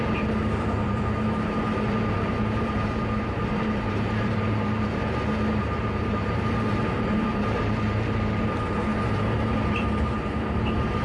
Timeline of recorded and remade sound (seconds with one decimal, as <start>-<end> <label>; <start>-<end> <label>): 0.0-5.0 remade; 5.0-5.6 recorded; 5.6-11.0 remade